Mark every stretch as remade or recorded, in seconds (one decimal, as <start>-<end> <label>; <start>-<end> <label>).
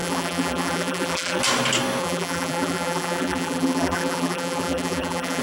0.0-1.4 remade; 1.4-2.0 recorded; 2.0-5.4 remade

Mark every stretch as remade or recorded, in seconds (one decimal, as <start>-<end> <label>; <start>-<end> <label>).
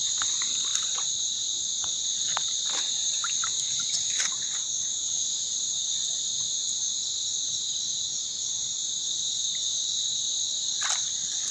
0.0-11.5 recorded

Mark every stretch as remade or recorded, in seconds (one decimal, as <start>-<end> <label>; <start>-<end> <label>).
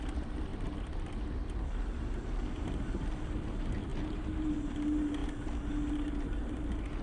0.0-0.5 recorded; 0.5-1.3 remade; 1.3-5.2 recorded; 5.2-5.7 remade; 5.7-7.0 recorded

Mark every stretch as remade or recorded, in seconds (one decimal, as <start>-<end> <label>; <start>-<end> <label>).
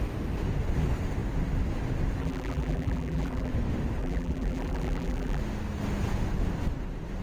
0.0-2.2 recorded; 2.2-3.5 remade; 3.5-4.0 recorded; 4.0-5.4 remade; 5.4-7.2 recorded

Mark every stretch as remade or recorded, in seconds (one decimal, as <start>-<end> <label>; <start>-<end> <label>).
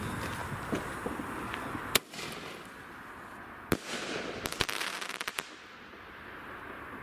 0.0-4.5 recorded; 4.5-6.2 remade; 6.2-7.0 recorded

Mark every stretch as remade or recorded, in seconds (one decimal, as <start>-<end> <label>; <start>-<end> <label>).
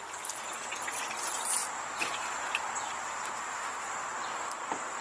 0.0-1.6 recorded; 1.6-4.6 remade; 4.6-5.0 recorded